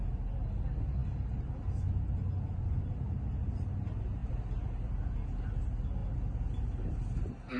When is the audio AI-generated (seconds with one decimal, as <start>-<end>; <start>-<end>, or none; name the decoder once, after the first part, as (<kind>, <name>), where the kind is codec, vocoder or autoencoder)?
4.2-4.9 (vocoder, BigVGAN v2)